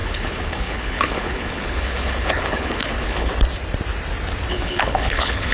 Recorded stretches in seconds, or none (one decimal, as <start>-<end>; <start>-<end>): 3.3-4.5